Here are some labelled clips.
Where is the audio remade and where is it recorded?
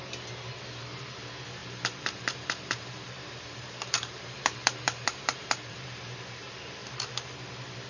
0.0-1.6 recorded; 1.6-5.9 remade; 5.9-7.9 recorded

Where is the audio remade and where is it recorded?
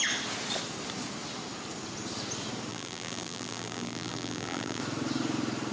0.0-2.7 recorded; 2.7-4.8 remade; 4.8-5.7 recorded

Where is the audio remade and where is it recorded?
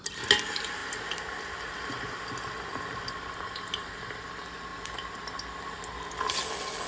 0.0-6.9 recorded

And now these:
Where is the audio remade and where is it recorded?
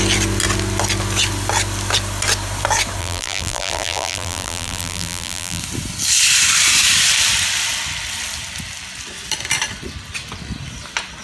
0.0-3.0 recorded; 3.0-5.6 remade; 5.6-11.2 recorded